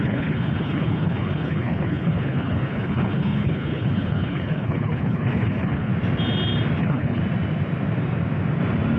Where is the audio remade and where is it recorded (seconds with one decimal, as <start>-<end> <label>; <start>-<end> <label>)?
0.0-5.9 remade; 5.9-6.8 recorded; 6.8-7.2 remade; 7.2-9.0 recorded